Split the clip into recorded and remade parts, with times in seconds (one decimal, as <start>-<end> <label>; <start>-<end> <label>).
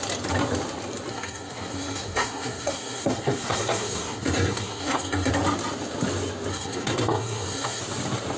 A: 0.0-1.1 recorded; 1.1-5.3 remade; 5.3-6.5 recorded; 6.5-7.8 remade; 7.8-8.4 recorded